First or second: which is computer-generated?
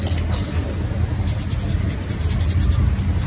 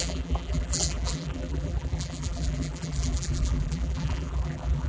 second